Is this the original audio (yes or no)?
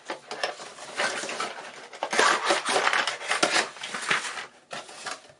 yes